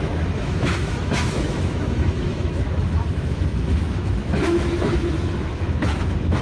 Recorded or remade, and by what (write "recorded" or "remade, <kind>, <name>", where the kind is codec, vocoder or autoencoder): remade, autoencoder, DAC-VAE